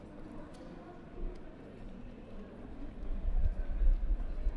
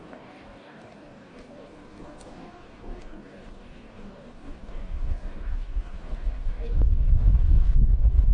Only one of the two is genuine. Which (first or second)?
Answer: first